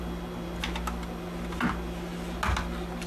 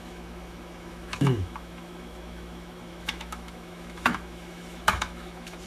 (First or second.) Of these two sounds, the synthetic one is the second